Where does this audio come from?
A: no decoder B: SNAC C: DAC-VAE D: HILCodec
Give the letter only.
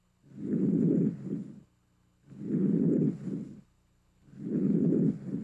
D